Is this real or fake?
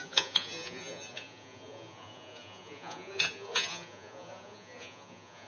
fake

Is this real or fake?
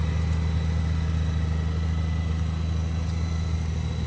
real